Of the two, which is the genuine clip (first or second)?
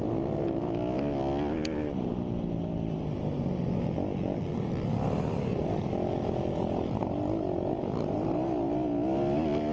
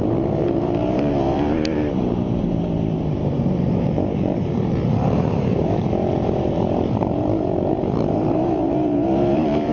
first